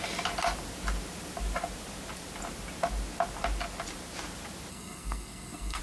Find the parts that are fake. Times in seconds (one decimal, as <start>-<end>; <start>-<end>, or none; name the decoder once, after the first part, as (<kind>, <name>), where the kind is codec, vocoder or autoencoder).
4.7-5.8 (codec, SNAC)